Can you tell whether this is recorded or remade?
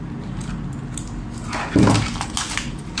recorded